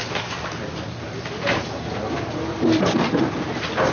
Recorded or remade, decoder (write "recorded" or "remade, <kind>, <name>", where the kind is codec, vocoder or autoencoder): recorded